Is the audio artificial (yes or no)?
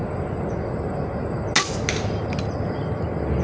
no